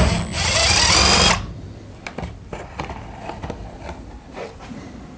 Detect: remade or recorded recorded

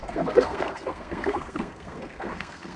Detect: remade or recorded remade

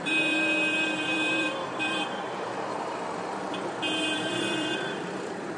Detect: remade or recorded remade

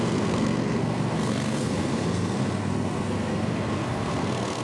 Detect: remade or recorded remade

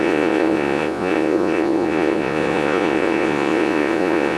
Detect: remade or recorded remade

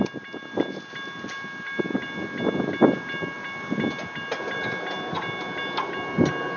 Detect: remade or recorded recorded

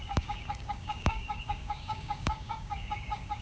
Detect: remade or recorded remade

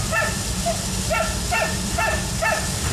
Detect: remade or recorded recorded